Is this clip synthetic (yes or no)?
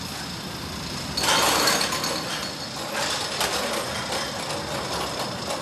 no